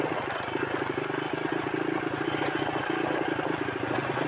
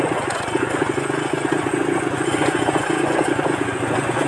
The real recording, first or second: first